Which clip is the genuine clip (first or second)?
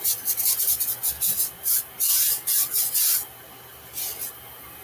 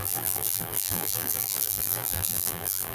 first